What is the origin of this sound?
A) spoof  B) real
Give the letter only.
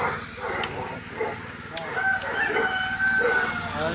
B